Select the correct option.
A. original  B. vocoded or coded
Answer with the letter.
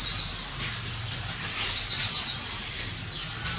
A